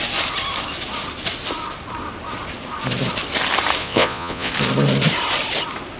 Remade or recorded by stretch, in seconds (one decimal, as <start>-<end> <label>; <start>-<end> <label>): 0.0-3.8 recorded; 3.8-4.5 remade; 4.5-6.0 recorded